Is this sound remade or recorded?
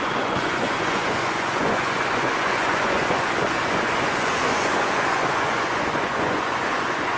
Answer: remade